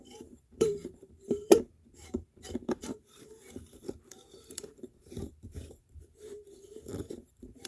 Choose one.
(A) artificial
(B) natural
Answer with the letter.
A